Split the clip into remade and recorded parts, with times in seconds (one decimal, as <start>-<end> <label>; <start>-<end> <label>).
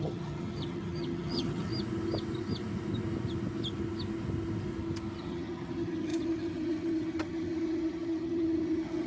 0.0-1.7 remade; 1.7-5.2 recorded; 5.2-9.1 remade